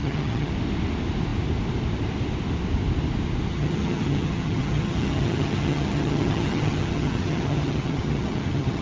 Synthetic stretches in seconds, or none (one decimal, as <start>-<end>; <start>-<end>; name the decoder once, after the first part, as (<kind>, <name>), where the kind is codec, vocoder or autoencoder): 0.0-0.5 (vocoder, HiFi-GAN); 3.5-8.8